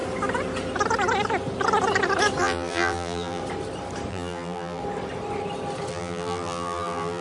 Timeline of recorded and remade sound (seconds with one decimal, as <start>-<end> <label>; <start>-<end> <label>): 0.0-2.4 recorded; 2.4-3.4 remade; 3.4-4.1 recorded; 4.1-4.8 remade; 4.8-5.9 recorded; 5.9-7.2 remade